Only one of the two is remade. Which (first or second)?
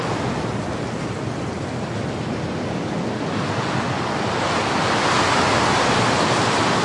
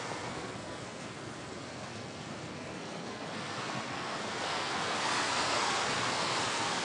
second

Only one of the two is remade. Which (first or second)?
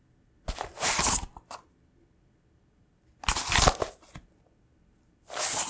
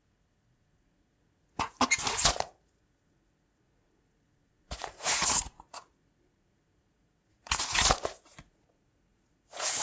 second